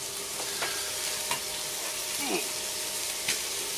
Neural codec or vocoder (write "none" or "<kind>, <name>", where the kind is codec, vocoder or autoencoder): none